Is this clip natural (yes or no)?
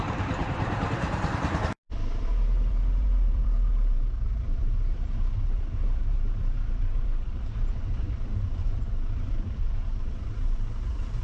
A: no